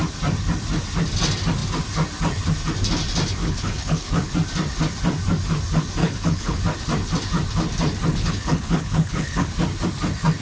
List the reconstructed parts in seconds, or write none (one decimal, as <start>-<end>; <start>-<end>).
3.4-4.3; 6.0-6.6; 8.1-9.5